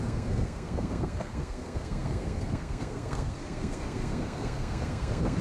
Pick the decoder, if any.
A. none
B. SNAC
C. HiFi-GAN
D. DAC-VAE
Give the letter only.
B